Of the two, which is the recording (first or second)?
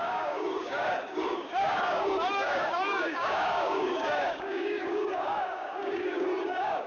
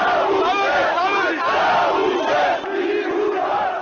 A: second